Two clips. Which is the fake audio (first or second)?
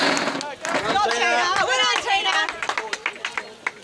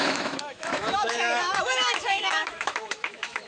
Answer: second